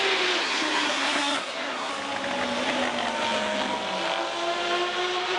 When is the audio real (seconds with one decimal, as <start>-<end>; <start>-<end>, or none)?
0.0-0.4; 1.9-5.4